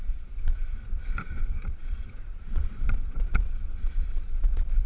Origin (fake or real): fake